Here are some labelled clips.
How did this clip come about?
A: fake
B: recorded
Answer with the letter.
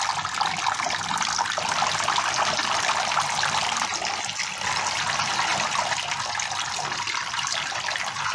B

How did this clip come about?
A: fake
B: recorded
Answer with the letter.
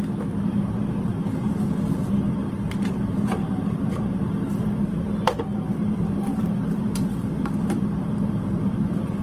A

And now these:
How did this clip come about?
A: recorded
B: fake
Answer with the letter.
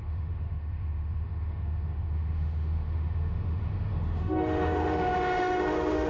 B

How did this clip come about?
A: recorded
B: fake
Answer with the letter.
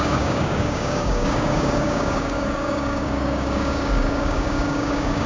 B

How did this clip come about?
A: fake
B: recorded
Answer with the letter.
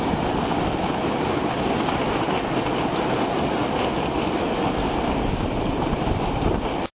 A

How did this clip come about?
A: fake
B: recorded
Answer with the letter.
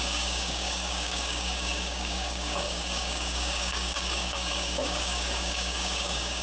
A